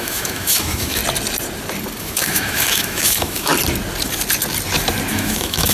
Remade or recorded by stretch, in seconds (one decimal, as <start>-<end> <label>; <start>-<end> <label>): 0.0-1.0 remade; 1.0-2.0 recorded; 2.0-3.5 remade; 3.5-5.1 recorded; 5.1-5.7 remade